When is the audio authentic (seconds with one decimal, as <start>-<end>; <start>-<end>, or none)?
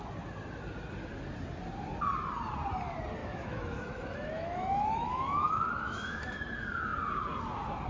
0.0-3.2; 6.4-7.9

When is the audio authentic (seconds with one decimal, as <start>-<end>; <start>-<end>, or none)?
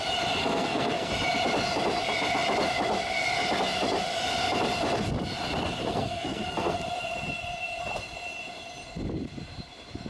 0.0-0.4; 1.1-5.8; 6.8-10.1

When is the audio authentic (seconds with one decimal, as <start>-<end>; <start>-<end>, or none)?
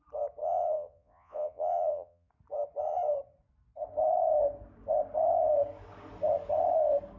0.0-0.4; 2.3-7.2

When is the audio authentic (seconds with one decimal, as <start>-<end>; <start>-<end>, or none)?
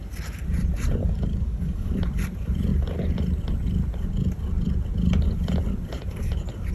0.0-1.0; 1.9-6.7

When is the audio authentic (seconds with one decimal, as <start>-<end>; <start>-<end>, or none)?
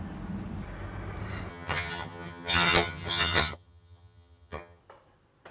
0.0-1.5; 4.8-5.5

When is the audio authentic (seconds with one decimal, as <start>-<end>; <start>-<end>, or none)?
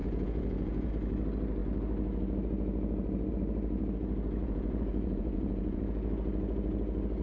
0.9-4.4; 5.8-7.2